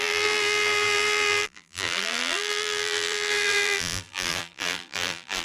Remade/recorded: remade